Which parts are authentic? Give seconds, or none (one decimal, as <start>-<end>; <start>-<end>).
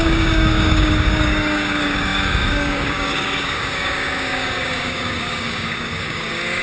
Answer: none